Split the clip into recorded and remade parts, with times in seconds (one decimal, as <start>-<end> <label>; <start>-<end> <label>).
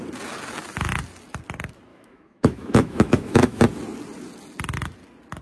0.0-1.9 recorded; 1.9-3.6 remade; 3.6-5.4 recorded